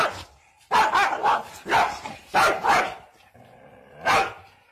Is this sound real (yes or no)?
yes